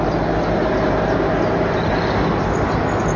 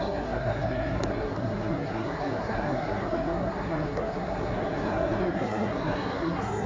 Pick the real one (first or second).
first